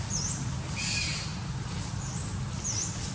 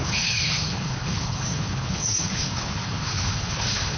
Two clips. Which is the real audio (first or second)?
first